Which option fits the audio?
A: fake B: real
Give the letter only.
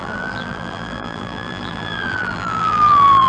A